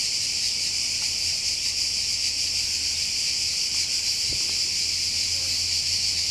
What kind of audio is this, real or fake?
real